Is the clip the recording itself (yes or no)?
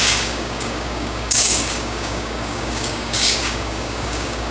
no